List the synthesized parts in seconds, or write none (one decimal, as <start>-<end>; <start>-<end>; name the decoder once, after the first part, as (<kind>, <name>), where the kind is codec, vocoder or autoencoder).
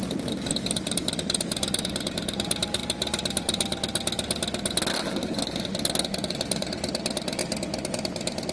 0.0-2.8 (vocoder, BigVGAN v2); 6.3-7.4; 7.9-8.5